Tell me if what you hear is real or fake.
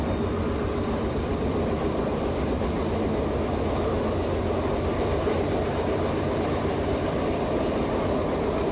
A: real